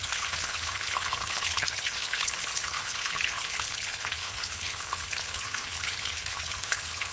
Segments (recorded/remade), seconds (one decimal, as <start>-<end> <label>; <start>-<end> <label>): 0.0-7.1 remade